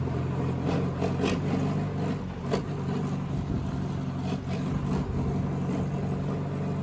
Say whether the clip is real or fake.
real